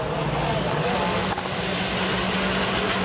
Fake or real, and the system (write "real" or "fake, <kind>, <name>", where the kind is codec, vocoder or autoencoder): real